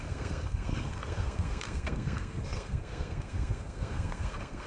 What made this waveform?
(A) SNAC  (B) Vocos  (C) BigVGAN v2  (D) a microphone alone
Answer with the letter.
A